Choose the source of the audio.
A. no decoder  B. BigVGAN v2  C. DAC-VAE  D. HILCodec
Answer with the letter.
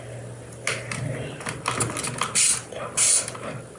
A